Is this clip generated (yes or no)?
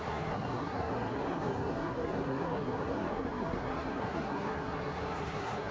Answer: yes